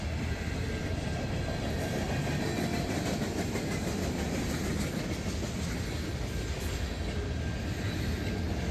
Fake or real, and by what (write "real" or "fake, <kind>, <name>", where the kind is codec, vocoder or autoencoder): real